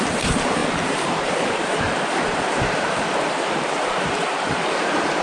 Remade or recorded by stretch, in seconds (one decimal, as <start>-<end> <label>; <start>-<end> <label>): 0.0-5.2 remade